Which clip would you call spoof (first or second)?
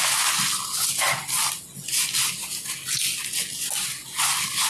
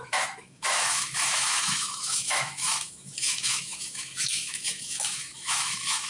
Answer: second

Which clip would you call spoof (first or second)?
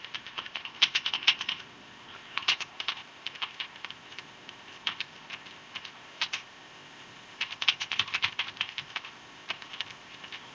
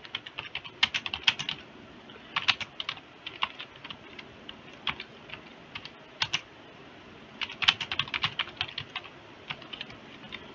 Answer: first